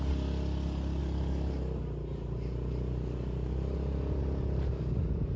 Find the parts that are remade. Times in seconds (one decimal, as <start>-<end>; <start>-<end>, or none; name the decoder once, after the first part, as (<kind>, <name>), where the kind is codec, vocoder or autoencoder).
none